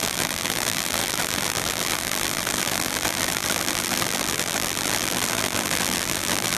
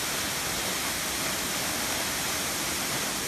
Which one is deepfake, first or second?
first